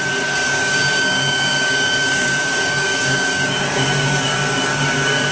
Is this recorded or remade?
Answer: remade